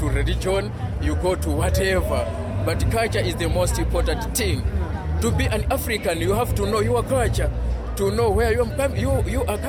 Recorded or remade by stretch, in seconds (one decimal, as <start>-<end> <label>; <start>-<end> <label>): 0.0-9.7 recorded